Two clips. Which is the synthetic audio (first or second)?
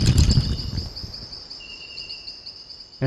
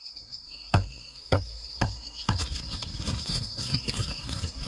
second